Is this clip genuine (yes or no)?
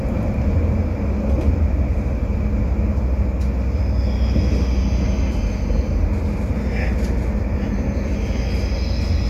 yes